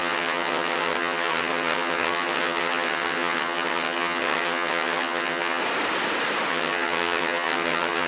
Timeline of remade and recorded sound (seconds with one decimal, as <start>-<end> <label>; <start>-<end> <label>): 0.0-5.6 remade; 5.6-6.5 recorded; 6.5-8.1 remade